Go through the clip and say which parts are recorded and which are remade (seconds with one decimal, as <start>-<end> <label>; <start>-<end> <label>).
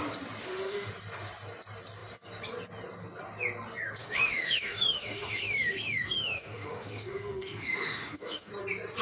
0.0-0.4 recorded; 0.4-0.9 remade; 0.9-4.0 recorded; 4.0-8.5 remade; 8.5-9.0 recorded